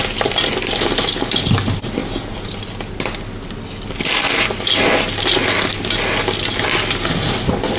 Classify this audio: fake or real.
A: real